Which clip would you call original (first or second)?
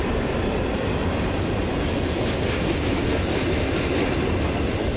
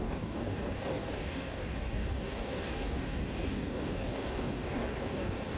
first